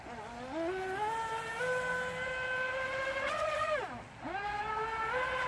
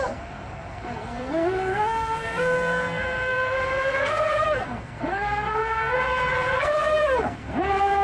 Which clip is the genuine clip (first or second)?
first